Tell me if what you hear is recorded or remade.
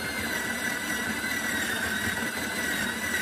recorded